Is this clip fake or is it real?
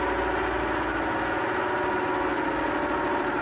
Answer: real